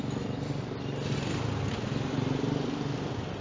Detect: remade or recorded recorded